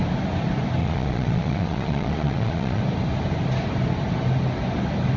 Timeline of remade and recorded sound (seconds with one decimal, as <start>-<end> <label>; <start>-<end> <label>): 0.0-0.8 recorded; 0.8-2.8 remade; 2.8-5.2 recorded